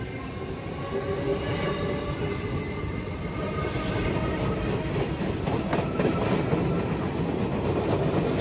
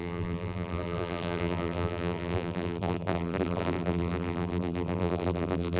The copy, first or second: second